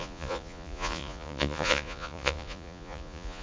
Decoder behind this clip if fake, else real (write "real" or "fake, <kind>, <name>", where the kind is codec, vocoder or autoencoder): fake, vocoder, Vocos